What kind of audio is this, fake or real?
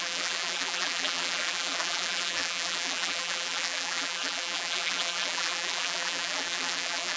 fake